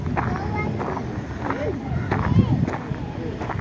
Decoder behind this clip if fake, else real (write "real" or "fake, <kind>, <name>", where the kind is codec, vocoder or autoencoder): real